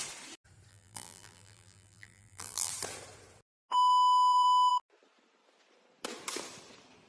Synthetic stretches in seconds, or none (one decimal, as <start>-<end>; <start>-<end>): 0.7-2.7